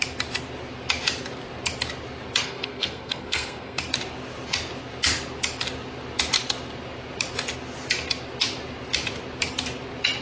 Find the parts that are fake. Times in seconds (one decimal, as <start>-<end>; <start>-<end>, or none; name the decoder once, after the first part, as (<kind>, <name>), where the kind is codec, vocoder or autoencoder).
2.4-3.8 (codec, SNAC)